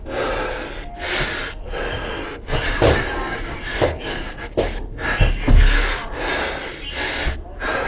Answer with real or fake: real